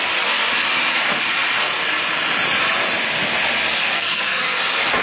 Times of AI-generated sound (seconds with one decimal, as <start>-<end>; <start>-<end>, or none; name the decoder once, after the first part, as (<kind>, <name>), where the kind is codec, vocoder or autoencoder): 3.8-4.6 (codec, SNAC)